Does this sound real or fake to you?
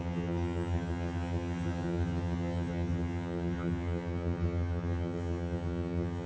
fake